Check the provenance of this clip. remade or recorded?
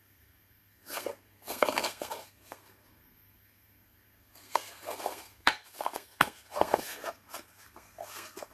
remade